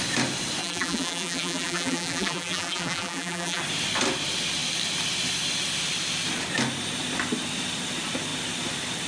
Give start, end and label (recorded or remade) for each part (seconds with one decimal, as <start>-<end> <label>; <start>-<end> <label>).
0.0-0.6 recorded; 0.6-3.6 remade; 3.6-9.1 recorded